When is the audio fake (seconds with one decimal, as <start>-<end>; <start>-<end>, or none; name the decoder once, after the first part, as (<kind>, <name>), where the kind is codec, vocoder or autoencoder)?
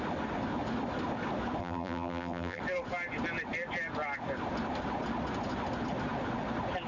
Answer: 1.6-2.6 (vocoder, BigVGAN v2)